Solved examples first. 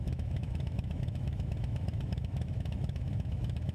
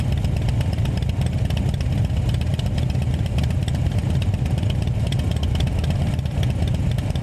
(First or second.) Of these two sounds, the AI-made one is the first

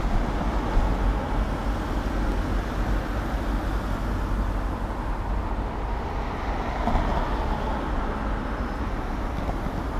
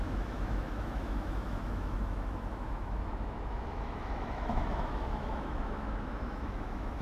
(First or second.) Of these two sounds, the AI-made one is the second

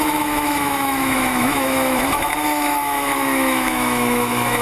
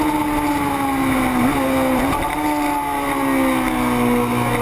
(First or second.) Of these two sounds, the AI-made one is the first